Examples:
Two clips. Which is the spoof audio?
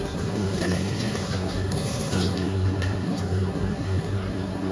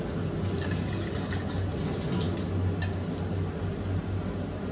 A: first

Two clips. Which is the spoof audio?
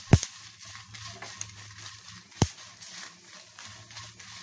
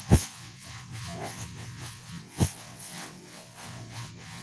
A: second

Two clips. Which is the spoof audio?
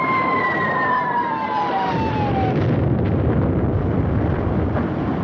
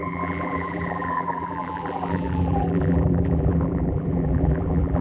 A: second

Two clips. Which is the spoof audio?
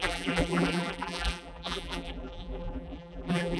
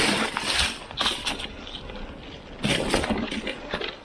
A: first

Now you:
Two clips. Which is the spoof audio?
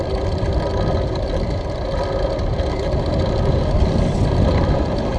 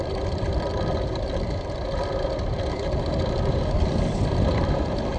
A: second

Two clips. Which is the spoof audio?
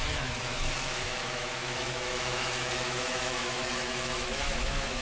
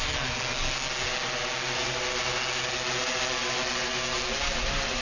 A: first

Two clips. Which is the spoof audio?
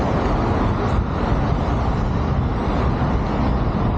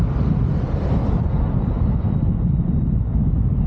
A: second